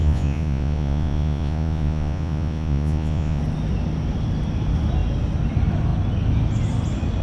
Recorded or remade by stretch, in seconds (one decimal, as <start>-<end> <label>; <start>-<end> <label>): 0.0-3.4 remade; 3.4-7.2 recorded

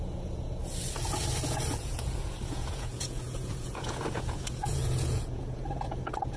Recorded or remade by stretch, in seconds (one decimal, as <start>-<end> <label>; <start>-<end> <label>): 0.0-0.6 remade; 0.6-1.7 recorded; 1.7-6.4 remade